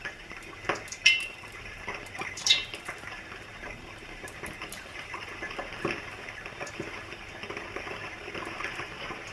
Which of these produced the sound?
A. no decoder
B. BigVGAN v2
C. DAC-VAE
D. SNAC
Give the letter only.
B